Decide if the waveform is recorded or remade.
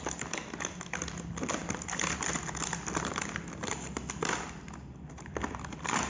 recorded